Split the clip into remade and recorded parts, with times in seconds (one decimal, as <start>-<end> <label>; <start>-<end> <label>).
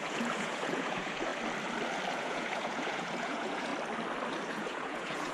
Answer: 0.0-1.3 remade; 1.3-2.1 recorded; 2.1-3.7 remade; 3.7-4.5 recorded; 4.5-5.3 remade